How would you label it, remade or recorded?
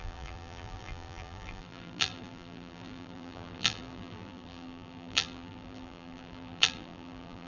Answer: remade